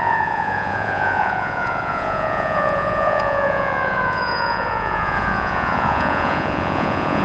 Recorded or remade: remade